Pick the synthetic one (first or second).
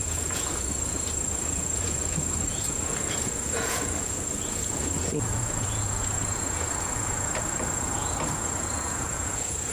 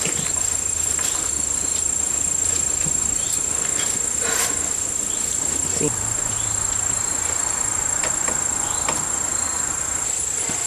first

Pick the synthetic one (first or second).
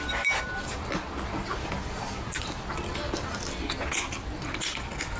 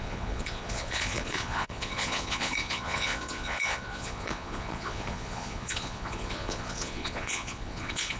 second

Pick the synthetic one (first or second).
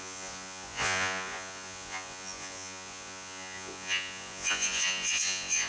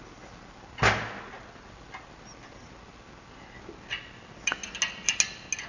first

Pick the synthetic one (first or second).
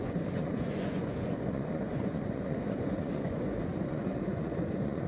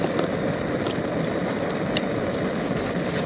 first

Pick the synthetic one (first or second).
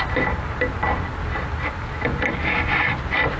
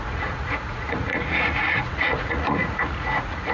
second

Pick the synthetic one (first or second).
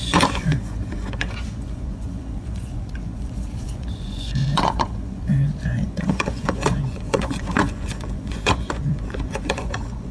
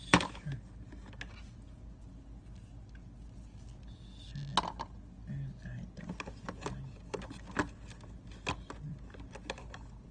first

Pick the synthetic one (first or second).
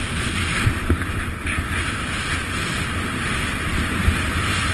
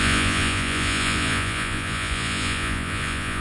second